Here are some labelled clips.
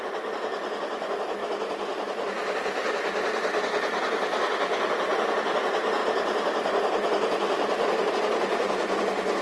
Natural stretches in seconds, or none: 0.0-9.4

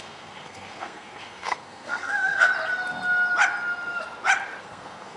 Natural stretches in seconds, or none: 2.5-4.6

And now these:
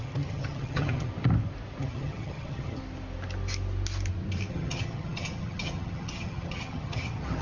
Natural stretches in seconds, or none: 1.1-1.8; 2.8-4.5

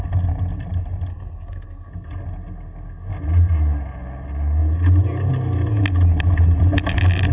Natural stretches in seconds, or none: 0.0-1.1; 1.9-7.3

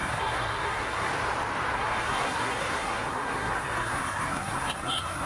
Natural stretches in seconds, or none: 1.1-1.7

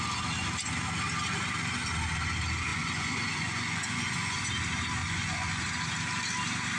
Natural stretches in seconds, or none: 0.0-2.7; 4.5-5.0; 5.6-6.8

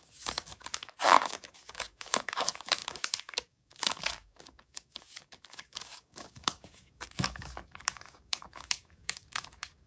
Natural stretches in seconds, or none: none

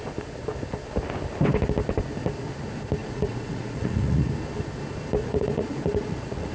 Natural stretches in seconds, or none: 0.0-3.0; 4.3-5.2